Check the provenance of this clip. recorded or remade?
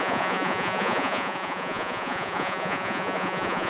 remade